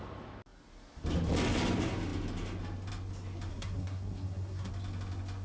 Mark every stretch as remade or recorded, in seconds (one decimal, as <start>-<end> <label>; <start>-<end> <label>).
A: 0.0-3.5 recorded; 3.5-4.7 remade; 4.7-5.4 recorded